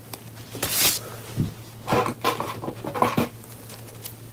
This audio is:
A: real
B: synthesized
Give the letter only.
A